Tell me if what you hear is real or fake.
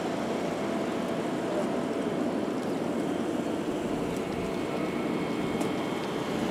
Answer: real